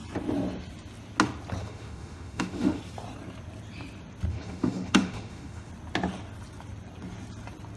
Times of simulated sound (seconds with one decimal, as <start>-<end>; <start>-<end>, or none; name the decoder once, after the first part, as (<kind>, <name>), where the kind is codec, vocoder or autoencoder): 1.6-2.8 (autoencoder, DAC-VAE); 4.3-5.7